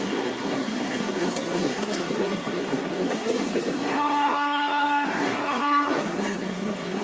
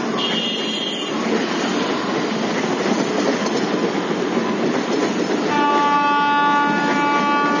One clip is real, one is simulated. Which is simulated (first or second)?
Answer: first